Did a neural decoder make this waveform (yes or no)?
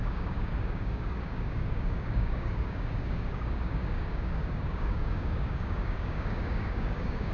yes